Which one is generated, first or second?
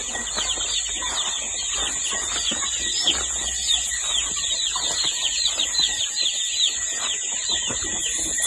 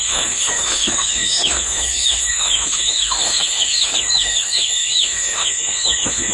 second